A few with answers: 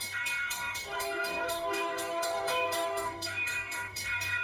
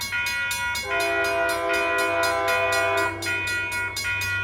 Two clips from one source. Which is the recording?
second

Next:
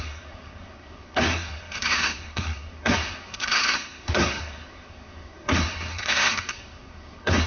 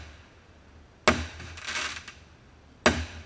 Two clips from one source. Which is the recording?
second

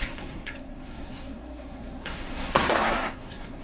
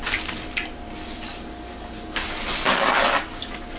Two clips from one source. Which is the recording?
second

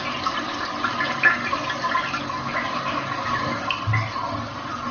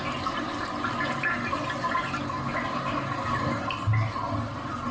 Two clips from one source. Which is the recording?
second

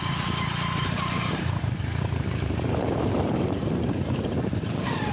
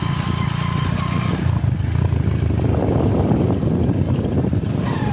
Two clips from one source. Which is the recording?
second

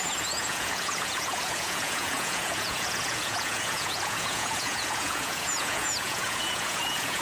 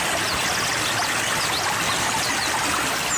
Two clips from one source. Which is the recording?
second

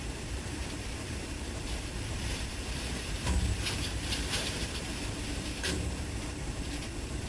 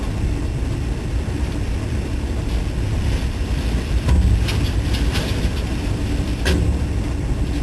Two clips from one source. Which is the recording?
second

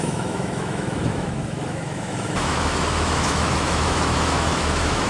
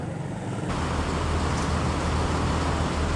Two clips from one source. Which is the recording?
second